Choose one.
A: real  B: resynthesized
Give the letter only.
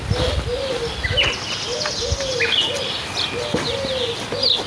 A